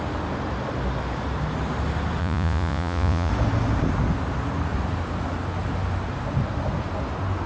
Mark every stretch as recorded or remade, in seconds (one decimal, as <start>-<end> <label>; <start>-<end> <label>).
0.0-2.2 recorded; 2.2-3.3 remade; 3.3-7.5 recorded